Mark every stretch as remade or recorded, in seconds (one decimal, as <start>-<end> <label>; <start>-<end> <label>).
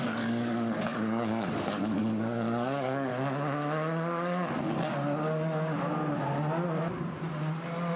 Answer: 0.0-3.1 remade; 3.1-8.0 recorded